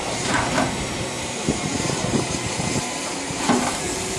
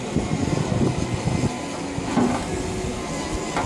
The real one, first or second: second